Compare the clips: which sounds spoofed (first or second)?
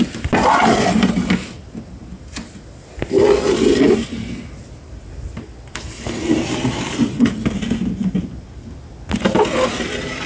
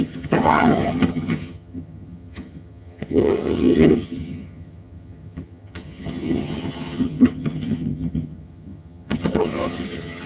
second